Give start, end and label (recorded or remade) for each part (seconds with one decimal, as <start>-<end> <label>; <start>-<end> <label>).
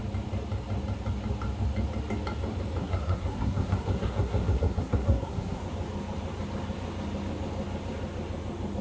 0.0-2.8 recorded; 2.8-5.6 remade; 5.6-8.8 recorded